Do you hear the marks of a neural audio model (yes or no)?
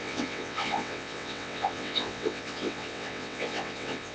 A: yes